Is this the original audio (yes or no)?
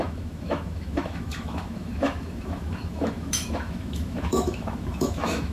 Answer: no